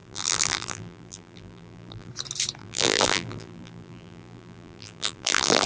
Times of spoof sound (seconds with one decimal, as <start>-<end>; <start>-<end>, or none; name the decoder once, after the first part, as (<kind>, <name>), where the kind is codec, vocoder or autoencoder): 0.0-2.1 (vocoder, BigVGAN v2); 2.6-5.7